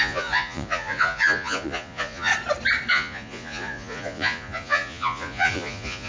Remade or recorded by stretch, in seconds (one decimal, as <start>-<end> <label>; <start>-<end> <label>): 0.0-2.3 remade; 2.3-2.9 recorded; 2.9-6.1 remade